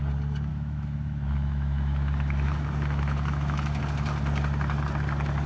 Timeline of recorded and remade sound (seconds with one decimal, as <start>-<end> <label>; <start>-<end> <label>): 0.0-0.5 recorded; 0.5-3.8 remade; 3.8-5.5 recorded